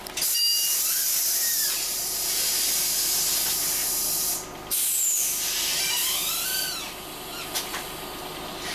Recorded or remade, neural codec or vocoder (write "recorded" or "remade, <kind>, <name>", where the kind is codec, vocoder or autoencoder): recorded